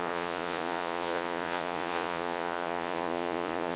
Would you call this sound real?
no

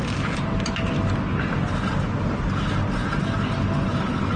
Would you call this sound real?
yes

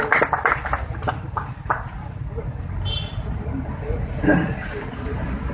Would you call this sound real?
yes